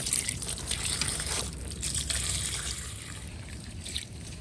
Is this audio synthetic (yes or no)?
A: yes